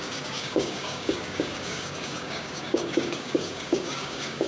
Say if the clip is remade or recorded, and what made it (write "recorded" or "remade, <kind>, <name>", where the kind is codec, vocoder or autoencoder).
remade, codec, DAC